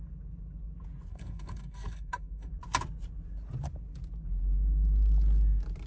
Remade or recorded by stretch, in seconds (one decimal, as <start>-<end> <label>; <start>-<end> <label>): 0.0-1.1 recorded; 1.1-2.5 remade; 2.5-5.9 recorded